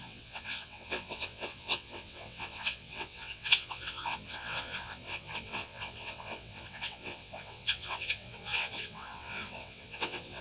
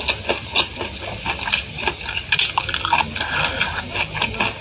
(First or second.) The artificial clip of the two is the first